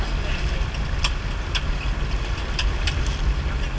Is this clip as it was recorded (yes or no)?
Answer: yes